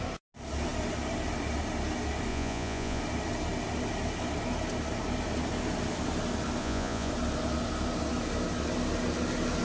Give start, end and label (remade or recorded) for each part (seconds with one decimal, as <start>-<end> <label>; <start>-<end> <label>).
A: 0.0-2.3 recorded; 2.3-3.0 remade; 3.0-6.6 recorded; 6.6-7.1 remade; 7.1-9.6 recorded